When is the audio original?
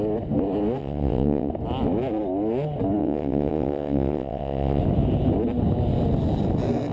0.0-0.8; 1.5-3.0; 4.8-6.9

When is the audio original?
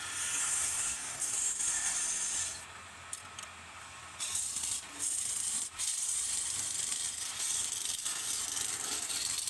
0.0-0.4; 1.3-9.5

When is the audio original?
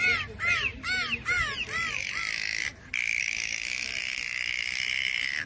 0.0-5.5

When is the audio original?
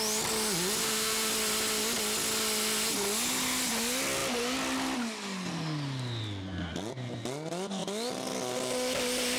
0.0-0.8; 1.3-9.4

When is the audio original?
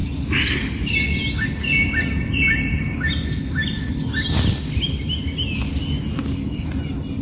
0.0-6.2; 6.7-7.2